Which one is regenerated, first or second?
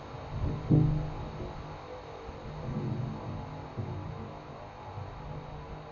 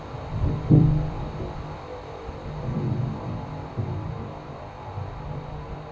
second